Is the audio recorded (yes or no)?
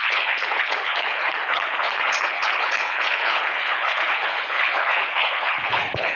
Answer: no